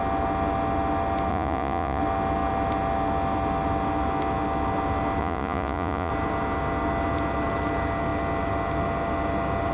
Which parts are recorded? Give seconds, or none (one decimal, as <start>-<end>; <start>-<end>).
0.0-1.3; 2.0-5.2; 6.1-9.7